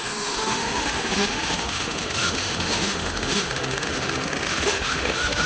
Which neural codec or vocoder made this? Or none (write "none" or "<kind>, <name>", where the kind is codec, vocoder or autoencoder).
autoencoder, DAC-VAE